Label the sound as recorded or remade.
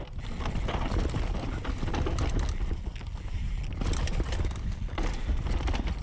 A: recorded